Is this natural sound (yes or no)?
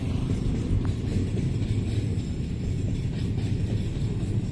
yes